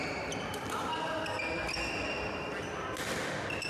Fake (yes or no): no